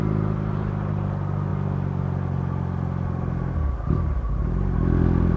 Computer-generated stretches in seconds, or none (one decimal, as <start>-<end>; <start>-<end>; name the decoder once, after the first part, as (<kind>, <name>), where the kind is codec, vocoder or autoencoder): none

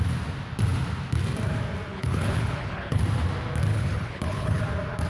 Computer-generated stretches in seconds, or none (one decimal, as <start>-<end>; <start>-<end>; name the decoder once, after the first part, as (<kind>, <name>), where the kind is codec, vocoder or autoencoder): 1.9-3.0 (codec, HILCodec); 3.7-4.6

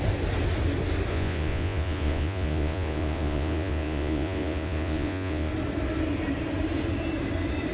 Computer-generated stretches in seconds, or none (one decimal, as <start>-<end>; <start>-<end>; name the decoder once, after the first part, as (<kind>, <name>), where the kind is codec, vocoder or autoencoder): 1.1-5.5 (vocoder, Vocos)

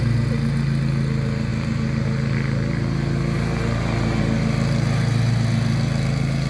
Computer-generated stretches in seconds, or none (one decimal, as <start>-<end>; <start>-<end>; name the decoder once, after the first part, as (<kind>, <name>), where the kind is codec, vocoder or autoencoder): none